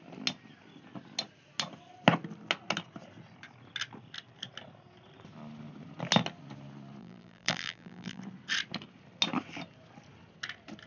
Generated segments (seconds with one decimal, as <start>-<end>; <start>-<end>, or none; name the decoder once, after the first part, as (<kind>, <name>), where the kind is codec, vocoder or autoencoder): 7.0-8.2 (vocoder, BigVGAN v2)